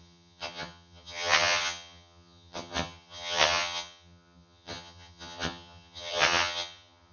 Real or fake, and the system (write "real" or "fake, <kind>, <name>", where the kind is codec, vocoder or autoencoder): fake, vocoder, HiFi-GAN